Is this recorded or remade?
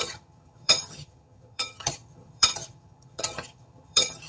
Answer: remade